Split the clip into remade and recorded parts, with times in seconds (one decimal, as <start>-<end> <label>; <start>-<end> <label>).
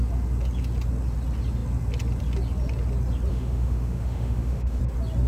0.0-3.3 recorded; 3.3-4.8 remade; 4.8-5.3 recorded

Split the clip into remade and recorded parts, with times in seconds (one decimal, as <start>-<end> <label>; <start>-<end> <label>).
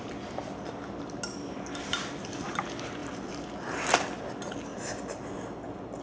0.0-6.0 recorded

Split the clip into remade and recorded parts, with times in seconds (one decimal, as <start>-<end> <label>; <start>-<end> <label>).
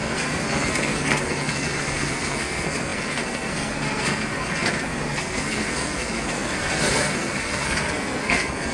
0.0-8.7 remade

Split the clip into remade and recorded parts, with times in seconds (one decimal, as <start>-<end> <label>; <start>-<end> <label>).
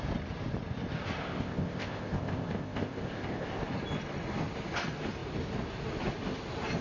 0.0-1.2 recorded; 1.2-3.6 remade; 3.6-6.8 recorded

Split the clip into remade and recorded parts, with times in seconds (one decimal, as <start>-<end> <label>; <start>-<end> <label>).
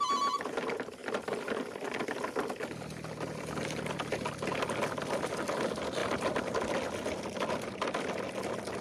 0.0-8.8 recorded